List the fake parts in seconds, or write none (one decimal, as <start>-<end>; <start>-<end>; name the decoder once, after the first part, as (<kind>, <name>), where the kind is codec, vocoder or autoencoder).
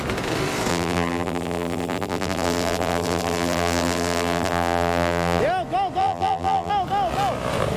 0.7-5.4 (vocoder, BigVGAN v2); 6.0-6.7